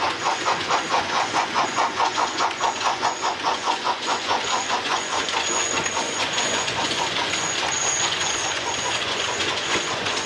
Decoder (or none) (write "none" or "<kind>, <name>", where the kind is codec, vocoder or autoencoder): vocoder, Vocos